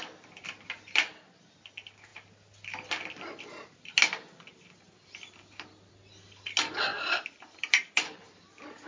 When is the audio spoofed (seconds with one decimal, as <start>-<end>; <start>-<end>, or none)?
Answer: 6.9-8.3